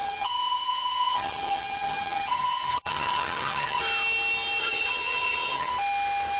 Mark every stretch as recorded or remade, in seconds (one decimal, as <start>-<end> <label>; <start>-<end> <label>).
0.0-3.8 remade; 3.8-4.6 recorded; 4.6-5.7 remade; 5.7-6.4 recorded